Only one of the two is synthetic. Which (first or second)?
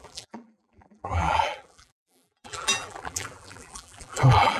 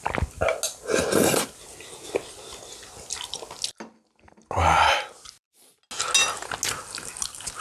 first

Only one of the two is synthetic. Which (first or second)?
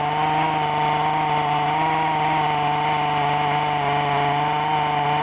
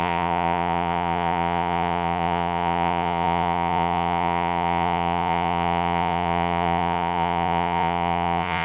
second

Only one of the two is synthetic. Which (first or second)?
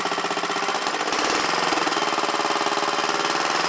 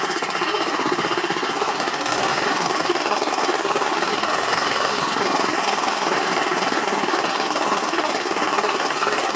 second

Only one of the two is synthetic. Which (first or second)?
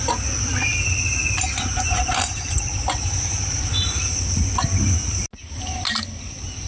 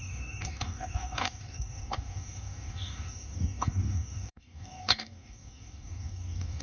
second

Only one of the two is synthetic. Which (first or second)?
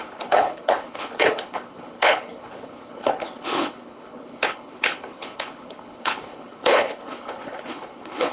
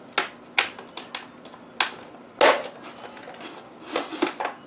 first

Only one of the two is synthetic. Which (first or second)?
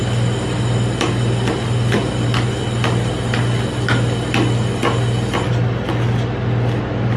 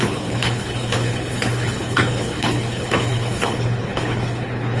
second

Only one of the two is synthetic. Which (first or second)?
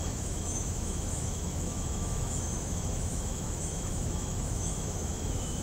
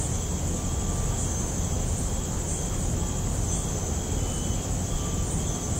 first